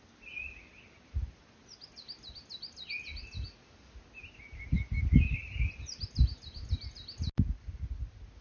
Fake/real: real